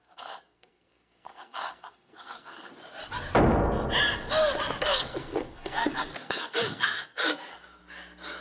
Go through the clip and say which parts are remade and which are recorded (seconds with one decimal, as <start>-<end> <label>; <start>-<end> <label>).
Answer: 0.0-2.7 remade; 2.7-4.8 recorded; 4.8-7.8 remade; 7.8-8.4 recorded